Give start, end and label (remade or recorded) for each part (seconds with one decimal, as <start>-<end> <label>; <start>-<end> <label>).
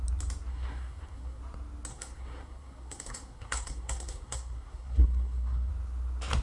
0.0-0.5 recorded; 0.5-1.4 remade; 1.4-1.9 recorded; 1.9-5.7 remade; 5.7-6.4 recorded